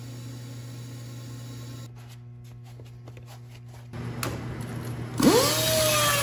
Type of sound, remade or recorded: recorded